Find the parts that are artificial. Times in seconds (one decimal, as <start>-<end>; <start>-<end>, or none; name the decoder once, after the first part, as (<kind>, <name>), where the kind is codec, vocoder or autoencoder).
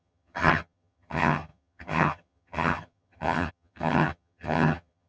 0.0-5.1 (vocoder, HiFi-GAN)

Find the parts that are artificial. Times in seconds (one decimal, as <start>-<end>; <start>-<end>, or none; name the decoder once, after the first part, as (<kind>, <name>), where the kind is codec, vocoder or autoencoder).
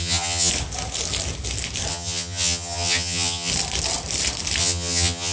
0.0-0.5 (vocoder, HiFi-GAN); 1.9-3.5; 4.6-5.3